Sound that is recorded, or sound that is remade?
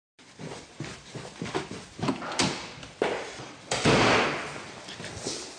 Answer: recorded